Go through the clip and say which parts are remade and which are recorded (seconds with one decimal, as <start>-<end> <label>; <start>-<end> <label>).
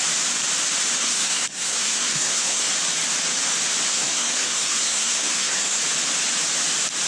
0.0-1.0 recorded; 1.0-2.7 remade; 2.7-3.9 recorded; 3.9-5.8 remade; 5.8-7.1 recorded